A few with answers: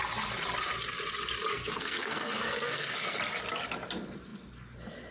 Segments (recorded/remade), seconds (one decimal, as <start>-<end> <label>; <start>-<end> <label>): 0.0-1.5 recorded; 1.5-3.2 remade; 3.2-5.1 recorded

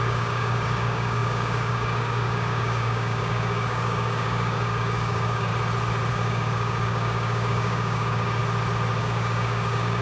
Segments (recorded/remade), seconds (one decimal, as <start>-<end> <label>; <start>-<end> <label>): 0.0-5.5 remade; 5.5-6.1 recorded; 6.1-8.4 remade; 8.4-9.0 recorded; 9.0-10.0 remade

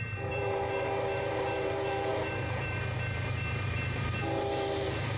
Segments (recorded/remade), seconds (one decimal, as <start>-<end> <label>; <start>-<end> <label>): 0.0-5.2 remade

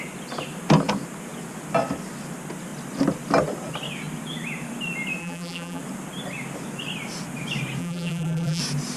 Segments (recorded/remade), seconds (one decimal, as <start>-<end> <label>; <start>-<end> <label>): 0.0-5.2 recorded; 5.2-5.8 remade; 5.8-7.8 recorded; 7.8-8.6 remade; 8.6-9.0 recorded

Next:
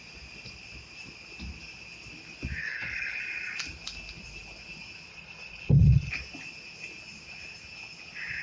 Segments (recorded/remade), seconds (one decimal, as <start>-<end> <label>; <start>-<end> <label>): 0.0-2.6 recorded; 2.6-3.2 remade; 3.2-5.1 recorded; 5.1-6.1 remade; 6.1-8.4 recorded

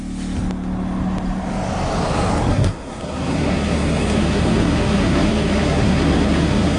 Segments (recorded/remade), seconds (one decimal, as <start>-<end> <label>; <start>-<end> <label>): 0.0-2.5 recorded; 2.5-6.8 remade

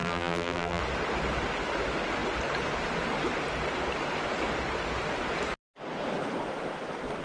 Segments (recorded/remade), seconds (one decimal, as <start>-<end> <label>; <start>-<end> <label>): 0.0-0.8 remade; 0.8-7.2 recorded

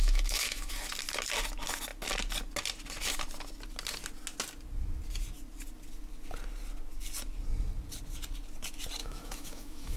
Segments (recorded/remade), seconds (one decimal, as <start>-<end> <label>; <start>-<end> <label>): 0.0-0.7 remade; 0.7-9.0 recorded; 9.0-10.0 remade